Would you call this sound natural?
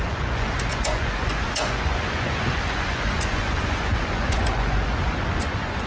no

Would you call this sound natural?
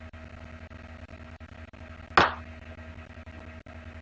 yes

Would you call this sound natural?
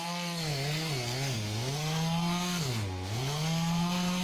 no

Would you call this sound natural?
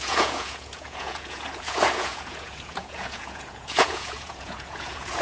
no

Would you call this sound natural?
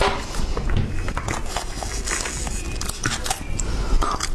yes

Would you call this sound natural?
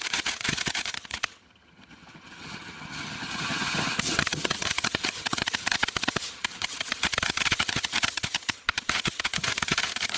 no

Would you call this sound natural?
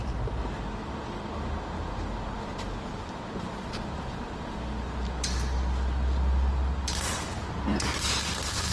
yes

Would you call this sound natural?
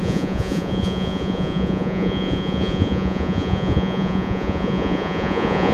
no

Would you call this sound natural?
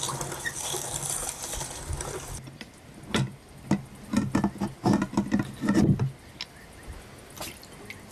yes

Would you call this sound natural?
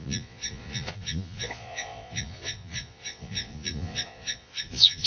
no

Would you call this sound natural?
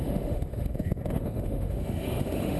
no